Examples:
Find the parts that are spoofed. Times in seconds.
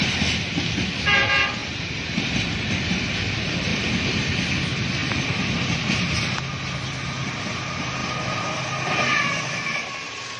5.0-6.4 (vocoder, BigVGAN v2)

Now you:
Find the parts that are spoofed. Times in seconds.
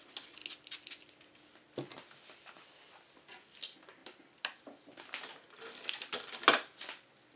none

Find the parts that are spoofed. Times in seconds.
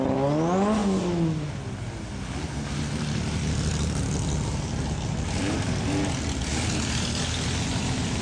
none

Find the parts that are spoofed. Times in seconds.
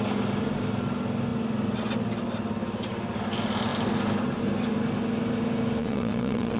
5.8-6.6 (vocoder, WaveNeXt)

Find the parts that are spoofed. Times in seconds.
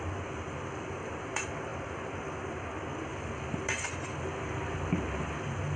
none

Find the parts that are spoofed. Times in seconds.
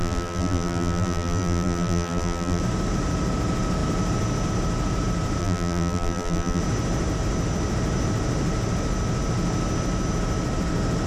0.0-2.6 (vocoder, BigVGAN v2); 5.4-6.6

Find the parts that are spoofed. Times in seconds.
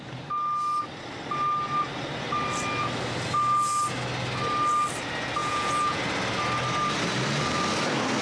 5.4-6.0 (vocoder, Vocos)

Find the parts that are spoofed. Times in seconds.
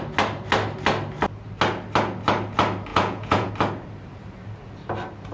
2.9-3.5 (vocoder, Vocos)